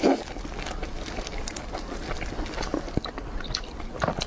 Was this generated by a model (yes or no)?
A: no